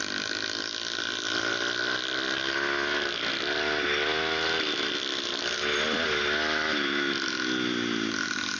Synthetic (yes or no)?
no